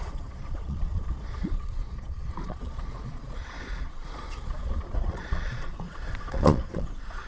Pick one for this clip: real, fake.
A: fake